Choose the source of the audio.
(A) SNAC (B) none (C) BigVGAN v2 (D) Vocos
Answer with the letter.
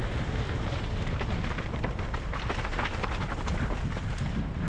B